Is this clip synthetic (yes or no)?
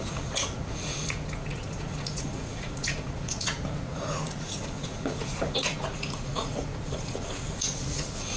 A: yes